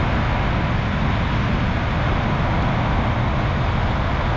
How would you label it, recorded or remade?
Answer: recorded